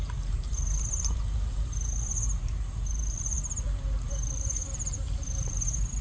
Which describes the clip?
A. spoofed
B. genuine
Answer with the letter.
A